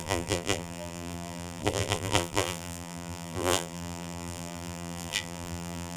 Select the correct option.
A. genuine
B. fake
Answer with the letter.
B